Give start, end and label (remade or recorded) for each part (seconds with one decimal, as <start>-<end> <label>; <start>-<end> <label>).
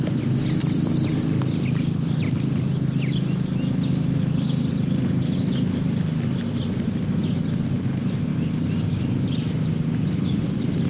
0.0-10.9 recorded